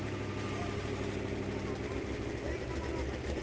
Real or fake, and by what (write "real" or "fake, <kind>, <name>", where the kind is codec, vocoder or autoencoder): real